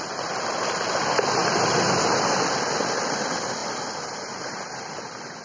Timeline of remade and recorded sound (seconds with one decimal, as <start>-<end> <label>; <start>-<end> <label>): 0.0-5.4 recorded